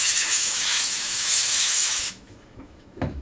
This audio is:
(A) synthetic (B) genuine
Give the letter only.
A